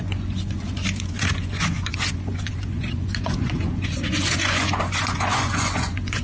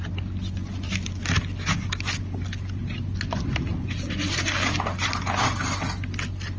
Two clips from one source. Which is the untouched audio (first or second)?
second